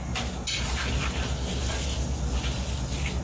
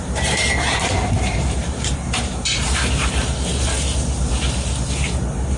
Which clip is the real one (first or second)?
first